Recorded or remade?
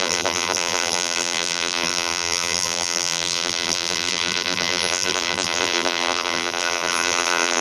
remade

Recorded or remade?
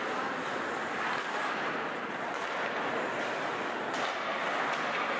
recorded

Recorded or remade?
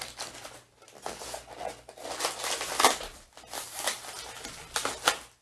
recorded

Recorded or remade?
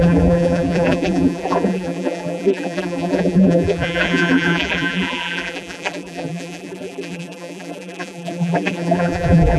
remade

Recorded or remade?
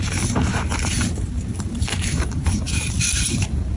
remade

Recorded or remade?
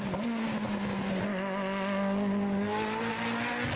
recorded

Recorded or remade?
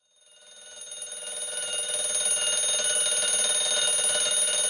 recorded